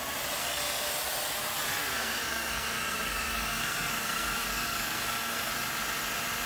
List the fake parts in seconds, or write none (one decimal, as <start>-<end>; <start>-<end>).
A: 0.4-0.9; 1.8-5.5

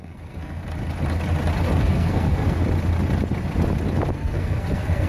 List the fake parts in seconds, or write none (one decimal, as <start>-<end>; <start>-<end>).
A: 0.0-0.6; 1.8-2.6; 4.1-5.1

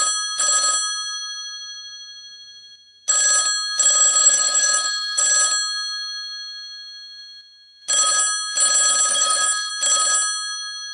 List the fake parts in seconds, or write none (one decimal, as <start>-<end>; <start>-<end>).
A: 4.2-5.2; 9.1-9.7

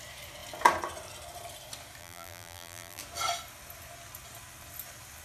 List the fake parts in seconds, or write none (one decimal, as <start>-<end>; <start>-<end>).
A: 2.0-3.0